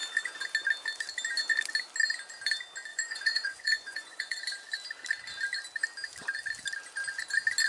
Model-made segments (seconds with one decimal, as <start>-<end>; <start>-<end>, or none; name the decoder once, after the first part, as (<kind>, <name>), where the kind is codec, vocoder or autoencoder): 2.9-4.4 (vocoder, Vocos)